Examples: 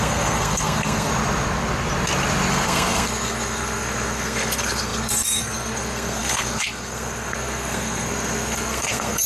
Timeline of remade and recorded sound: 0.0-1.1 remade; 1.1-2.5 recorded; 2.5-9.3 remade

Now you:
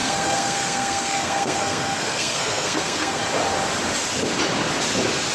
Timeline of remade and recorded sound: 0.0-3.2 remade; 3.2-5.3 recorded

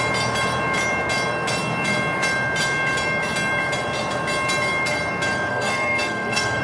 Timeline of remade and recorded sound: 0.0-5.5 recorded; 5.5-6.6 remade

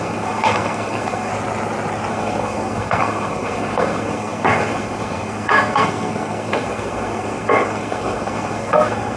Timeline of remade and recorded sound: 0.0-1.3 remade; 1.3-2.1 recorded; 2.1-9.2 remade

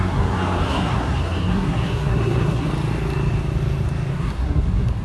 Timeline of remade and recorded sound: 0.0-2.7 remade; 2.7-4.1 recorded; 4.1-5.0 remade

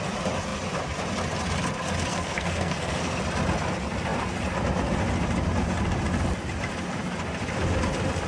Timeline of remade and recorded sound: 0.0-2.1 recorded; 2.1-3.2 remade; 3.2-8.3 recorded

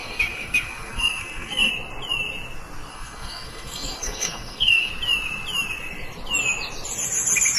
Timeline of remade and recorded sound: 0.0-1.7 remade; 1.7-2.9 recorded; 2.9-4.9 remade; 4.9-7.6 recorded

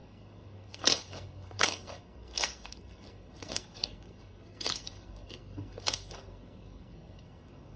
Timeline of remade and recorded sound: 0.0-7.8 remade